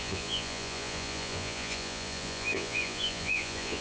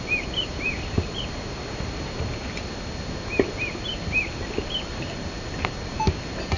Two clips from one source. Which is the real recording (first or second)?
second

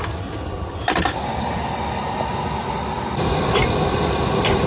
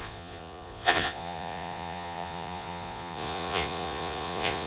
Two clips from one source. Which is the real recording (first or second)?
first